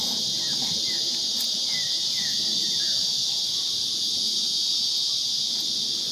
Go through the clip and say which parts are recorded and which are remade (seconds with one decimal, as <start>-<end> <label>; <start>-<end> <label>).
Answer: 0.0-3.0 recorded; 3.0-4.1 remade; 4.1-6.1 recorded